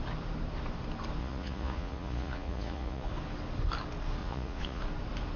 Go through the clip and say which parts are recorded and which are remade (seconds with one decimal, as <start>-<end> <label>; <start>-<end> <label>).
0.0-1.2 recorded; 1.2-3.1 remade; 3.1-4.2 recorded; 4.2-4.8 remade; 4.8-5.4 recorded